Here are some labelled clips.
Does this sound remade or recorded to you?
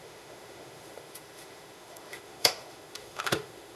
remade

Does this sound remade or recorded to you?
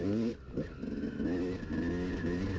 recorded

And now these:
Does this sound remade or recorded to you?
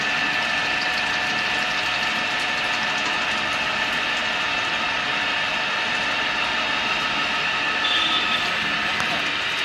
recorded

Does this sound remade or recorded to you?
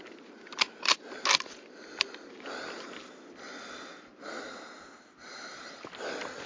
recorded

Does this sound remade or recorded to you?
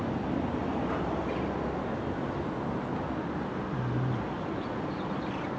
recorded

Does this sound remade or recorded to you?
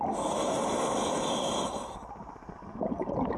recorded